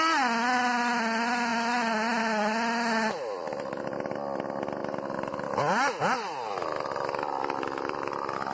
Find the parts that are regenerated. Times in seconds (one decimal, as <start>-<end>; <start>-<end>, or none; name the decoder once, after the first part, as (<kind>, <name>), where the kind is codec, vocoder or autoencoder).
none